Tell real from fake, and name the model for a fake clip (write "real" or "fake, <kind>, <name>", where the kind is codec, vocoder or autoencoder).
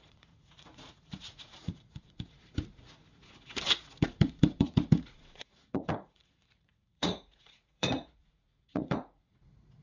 fake, vocoder, Vocos